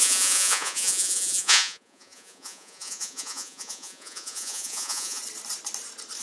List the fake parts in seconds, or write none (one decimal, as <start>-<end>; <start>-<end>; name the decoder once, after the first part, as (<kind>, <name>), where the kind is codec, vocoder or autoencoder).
0.0-5.2 (vocoder, Vocos)

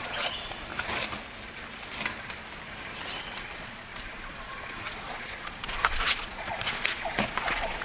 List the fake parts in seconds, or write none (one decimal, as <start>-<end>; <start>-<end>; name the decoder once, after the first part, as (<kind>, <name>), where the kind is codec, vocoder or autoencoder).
0.0-0.7 (vocoder, Vocos); 3.2-7.8

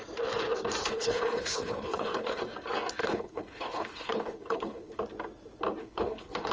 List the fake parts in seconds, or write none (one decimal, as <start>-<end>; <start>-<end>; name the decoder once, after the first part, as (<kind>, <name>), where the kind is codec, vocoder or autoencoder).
0.8-2.4 (codec, HILCodec); 3.0-5.0; 5.8-6.5

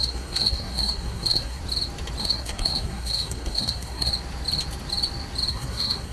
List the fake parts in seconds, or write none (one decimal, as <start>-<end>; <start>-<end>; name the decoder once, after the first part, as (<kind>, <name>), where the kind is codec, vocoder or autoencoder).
0.0-1.6 (codec, SNAC); 2.2-4.1; 5.5-6.1

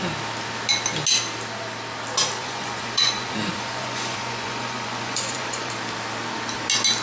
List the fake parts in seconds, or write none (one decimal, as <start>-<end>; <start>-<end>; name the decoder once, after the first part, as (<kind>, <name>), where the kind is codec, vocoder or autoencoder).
2.4-5.7 (vocoder, Vocos)

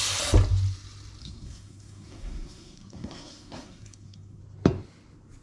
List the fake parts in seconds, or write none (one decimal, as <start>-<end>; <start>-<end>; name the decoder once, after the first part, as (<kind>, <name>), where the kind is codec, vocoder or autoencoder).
1.2-4.4 (codec, SNAC)